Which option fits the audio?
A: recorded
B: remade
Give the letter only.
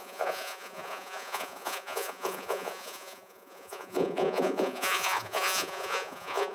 B